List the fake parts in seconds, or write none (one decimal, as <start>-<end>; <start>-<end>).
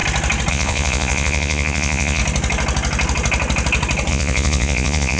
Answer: 0.5-2.2; 4.1-5.2